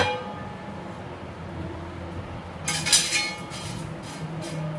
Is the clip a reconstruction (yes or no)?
no